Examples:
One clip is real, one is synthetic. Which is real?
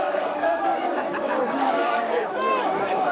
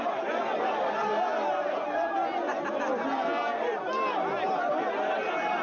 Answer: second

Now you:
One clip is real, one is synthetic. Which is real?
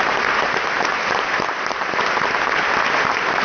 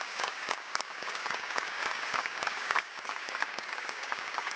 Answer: first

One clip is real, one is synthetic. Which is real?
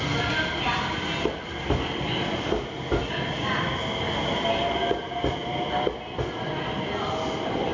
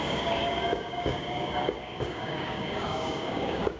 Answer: first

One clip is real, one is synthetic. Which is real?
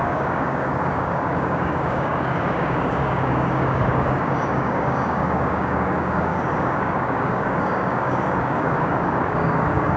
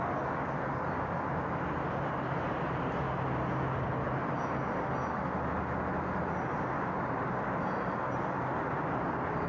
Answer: second